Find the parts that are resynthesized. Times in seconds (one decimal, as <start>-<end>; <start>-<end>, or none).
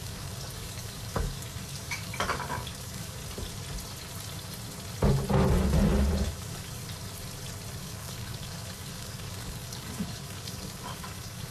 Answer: 0.0-3.2; 6.2-6.8; 7.8-11.5